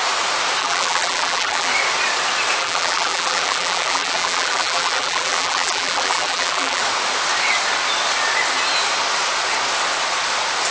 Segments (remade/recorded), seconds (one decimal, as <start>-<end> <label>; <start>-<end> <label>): 0.0-0.6 recorded; 0.6-1.7 remade; 1.7-2.6 recorded; 2.6-6.8 remade; 6.8-10.7 recorded